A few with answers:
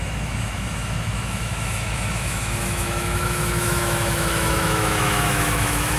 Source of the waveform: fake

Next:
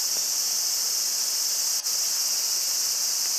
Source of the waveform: real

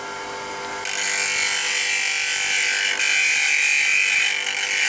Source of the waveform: real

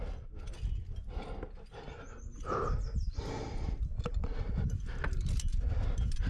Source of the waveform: real